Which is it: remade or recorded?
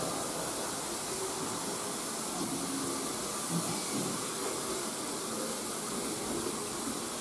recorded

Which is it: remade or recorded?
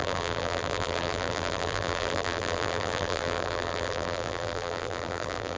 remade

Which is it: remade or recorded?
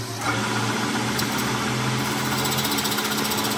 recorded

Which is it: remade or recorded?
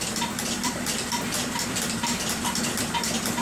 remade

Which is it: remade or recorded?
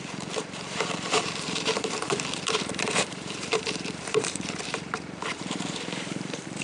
remade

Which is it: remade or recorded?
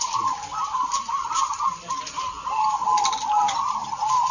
remade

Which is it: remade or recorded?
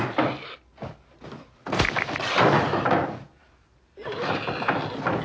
recorded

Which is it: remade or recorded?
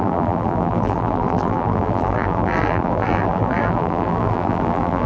remade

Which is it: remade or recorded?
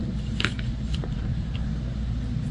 remade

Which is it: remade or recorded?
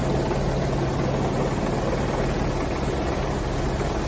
recorded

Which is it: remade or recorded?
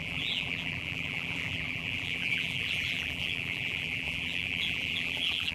remade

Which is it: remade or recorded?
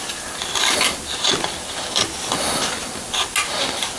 recorded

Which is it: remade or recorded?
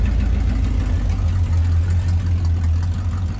recorded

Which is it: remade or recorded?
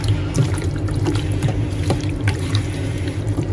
remade